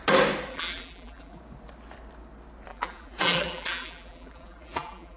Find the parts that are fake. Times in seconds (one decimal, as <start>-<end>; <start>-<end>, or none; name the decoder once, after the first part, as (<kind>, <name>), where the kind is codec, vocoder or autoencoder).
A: 0.5-1.4 (vocoder, BigVGAN v2); 2.7-5.2